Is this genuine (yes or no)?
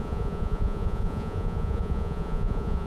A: no